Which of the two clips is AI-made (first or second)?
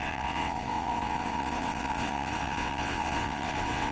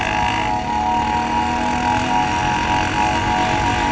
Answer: first